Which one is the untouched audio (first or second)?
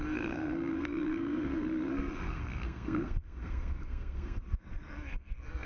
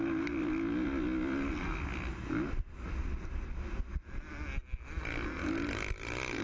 second